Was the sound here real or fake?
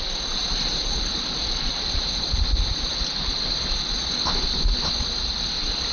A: real